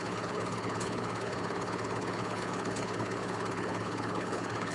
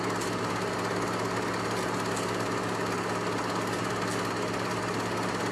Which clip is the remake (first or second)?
first